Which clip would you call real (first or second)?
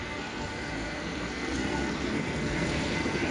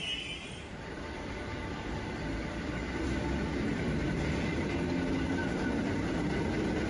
second